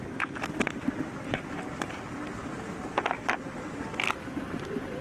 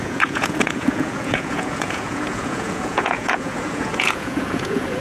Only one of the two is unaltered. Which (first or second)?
first